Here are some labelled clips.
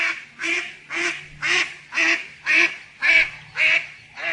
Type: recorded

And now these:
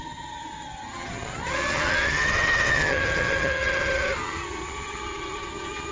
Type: remade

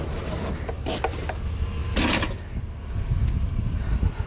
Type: recorded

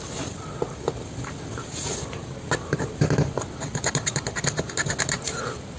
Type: recorded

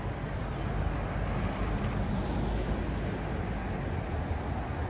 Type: recorded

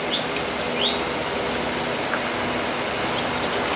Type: recorded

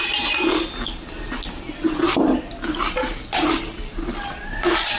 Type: recorded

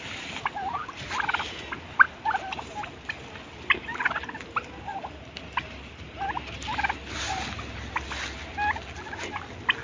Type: recorded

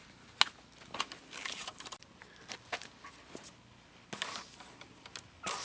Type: recorded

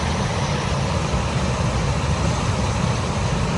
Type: recorded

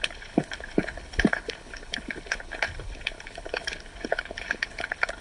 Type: remade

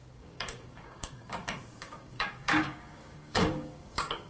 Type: remade